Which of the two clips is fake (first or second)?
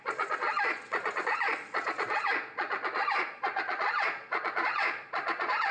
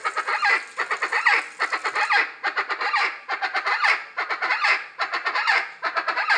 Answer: first